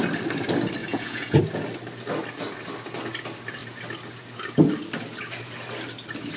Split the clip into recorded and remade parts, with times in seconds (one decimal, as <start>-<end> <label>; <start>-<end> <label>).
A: 0.0-0.8 recorded; 0.8-1.4 remade; 1.4-6.4 recorded